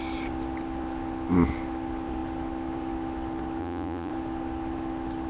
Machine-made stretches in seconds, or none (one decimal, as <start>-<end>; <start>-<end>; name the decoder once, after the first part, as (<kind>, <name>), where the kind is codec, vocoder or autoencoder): 3.6-4.1 (vocoder, Vocos)